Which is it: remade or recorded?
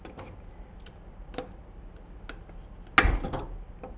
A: recorded